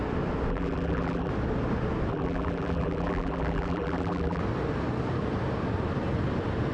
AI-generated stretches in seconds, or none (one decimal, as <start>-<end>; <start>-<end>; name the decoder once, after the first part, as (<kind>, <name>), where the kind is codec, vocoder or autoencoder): 0.5-1.3 (vocoder, BigVGAN v2); 2.1-4.4